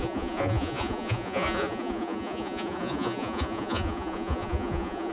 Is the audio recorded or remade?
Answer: remade